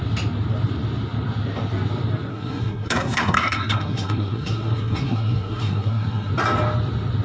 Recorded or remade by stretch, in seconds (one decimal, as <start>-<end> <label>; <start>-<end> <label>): 0.0-2.3 recorded; 2.3-6.3 remade; 6.3-7.2 recorded